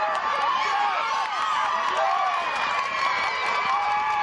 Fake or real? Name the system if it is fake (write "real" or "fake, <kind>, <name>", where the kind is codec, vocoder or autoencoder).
fake, vocoder, BigVGAN v2